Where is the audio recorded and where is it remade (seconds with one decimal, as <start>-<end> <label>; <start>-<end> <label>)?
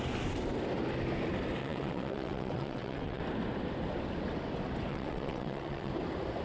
0.0-1.6 recorded; 1.6-3.2 remade; 3.2-4.9 recorded; 4.9-5.9 remade; 5.9-6.4 recorded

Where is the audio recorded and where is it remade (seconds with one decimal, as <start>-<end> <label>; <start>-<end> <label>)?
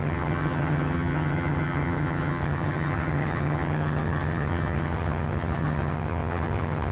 0.0-6.9 remade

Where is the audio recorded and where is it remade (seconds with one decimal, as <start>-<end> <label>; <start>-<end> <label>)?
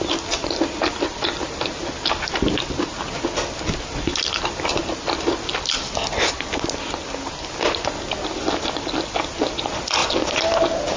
0.0-11.0 recorded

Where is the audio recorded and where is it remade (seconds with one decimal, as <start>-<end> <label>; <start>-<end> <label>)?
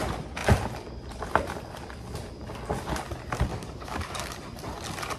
0.0-3.5 recorded; 3.5-4.3 remade; 4.3-5.2 recorded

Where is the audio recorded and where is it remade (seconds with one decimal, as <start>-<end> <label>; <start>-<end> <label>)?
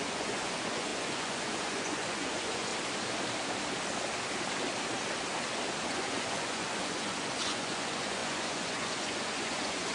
0.0-2.7 remade; 2.7-5.9 recorded; 5.9-9.9 remade